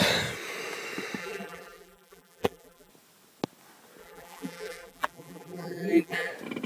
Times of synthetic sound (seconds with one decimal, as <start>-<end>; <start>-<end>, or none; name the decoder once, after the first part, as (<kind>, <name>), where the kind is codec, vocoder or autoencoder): 1.2-2.9 (vocoder, BigVGAN v2); 4.0-6.3